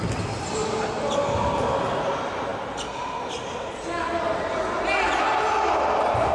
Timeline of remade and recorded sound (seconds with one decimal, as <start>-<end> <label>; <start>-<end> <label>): 0.0-6.3 recorded